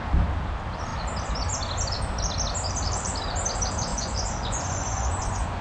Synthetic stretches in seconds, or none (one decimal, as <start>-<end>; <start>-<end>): 3.9-5.6